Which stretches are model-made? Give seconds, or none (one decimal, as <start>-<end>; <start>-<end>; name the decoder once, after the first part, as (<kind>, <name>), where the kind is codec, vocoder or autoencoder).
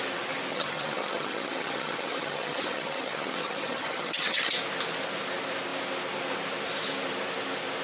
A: 0.5-4.5 (vocoder, HiFi-GAN)